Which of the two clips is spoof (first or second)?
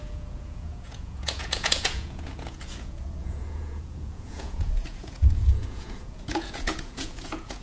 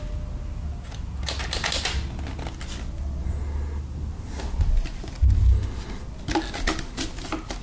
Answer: first